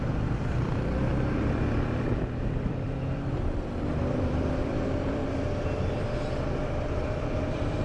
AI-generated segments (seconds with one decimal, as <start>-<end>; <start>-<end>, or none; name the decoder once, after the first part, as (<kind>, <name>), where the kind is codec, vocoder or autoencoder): 0.0-1.1 (vocoder, BigVGAN v2); 2.7-5.2; 6.0-7.8